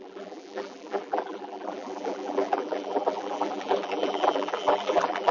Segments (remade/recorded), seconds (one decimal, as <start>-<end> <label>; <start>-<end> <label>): 0.0-5.3 remade